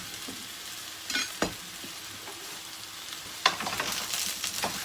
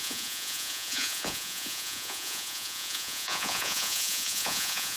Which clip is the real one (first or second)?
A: first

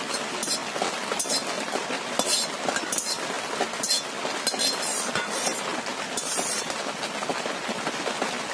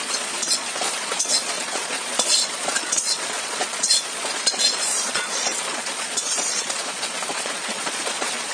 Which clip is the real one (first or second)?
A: first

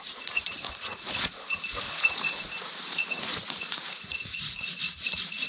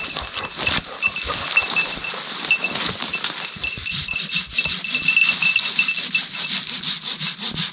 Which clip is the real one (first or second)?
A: second